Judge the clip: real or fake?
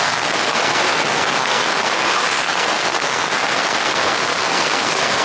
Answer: fake